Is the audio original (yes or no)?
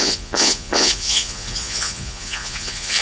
no